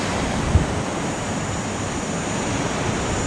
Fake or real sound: fake